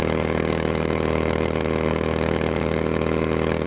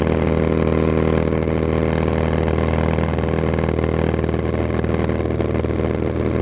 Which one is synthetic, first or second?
first